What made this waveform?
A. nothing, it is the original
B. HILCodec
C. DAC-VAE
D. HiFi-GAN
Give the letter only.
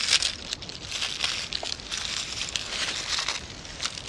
A